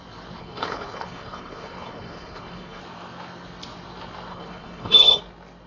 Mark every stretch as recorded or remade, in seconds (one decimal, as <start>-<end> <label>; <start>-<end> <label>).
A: 0.0-0.4 recorded; 0.4-2.8 remade; 2.8-4.3 recorded; 4.3-5.2 remade; 5.2-5.7 recorded